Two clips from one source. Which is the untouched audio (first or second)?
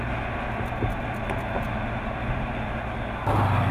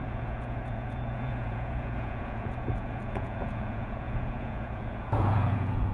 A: first